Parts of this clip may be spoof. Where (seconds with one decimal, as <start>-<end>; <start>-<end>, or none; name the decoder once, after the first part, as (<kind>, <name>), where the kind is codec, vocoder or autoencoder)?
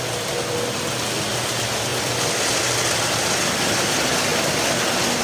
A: none